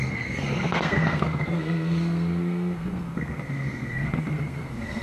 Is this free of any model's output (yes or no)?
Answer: no